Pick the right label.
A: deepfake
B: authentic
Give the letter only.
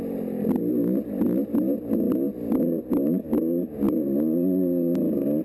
B